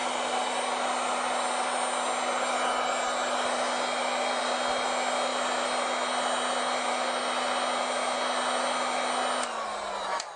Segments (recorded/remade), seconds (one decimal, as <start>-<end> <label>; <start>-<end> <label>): 0.0-10.4 recorded